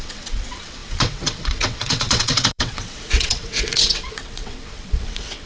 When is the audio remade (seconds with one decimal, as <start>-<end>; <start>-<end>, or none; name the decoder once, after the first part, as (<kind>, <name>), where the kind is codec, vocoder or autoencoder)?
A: 0.0-5.5 (vocoder, WaveNeXt)